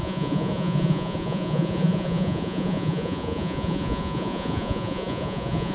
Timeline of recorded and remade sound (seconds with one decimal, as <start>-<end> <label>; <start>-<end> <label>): 0.0-5.7 remade